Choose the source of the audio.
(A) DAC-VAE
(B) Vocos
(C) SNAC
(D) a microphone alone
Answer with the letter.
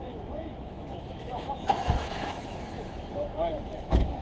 A